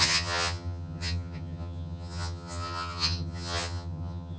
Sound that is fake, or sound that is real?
fake